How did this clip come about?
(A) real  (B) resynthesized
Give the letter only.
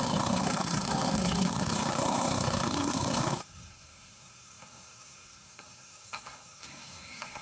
B